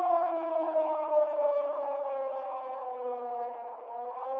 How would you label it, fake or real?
fake